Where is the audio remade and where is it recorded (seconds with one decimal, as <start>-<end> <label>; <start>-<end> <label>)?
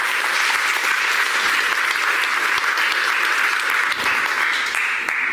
0.0-5.3 recorded